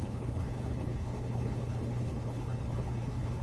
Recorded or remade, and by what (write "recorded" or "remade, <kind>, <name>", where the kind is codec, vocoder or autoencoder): remade, codec, HILCodec